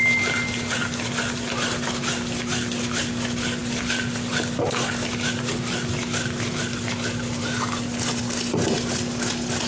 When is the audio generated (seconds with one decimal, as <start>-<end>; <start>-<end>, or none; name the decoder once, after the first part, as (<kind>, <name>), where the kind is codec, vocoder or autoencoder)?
none